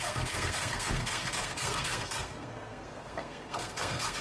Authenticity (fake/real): fake